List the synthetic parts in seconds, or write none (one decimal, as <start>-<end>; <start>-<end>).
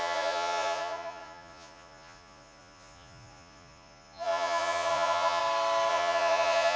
0.0-5.4; 5.9-6.8